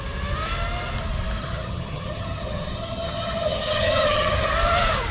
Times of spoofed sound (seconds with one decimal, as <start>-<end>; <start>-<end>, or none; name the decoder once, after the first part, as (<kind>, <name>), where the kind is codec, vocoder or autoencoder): 1.4-4.5 (vocoder, HiFi-GAN)